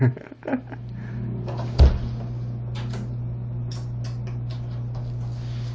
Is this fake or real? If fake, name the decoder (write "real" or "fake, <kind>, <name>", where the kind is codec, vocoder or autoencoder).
real